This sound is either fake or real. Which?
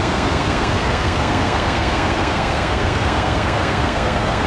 fake